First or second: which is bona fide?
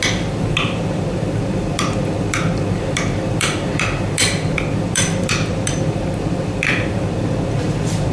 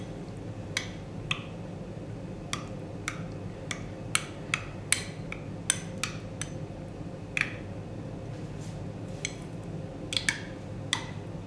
second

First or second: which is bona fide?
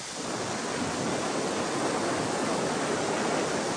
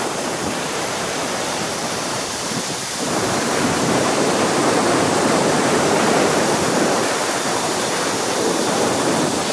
first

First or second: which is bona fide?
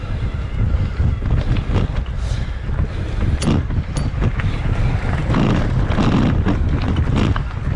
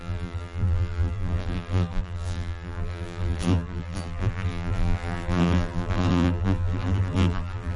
first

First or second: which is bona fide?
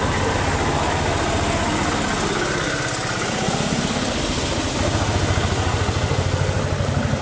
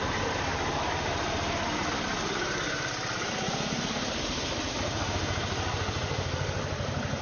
first